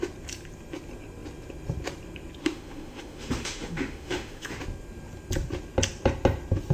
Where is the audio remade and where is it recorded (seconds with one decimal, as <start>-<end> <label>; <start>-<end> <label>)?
0.0-2.4 recorded; 2.4-4.6 remade; 4.6-6.7 recorded